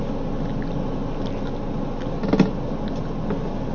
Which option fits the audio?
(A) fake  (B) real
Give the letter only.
B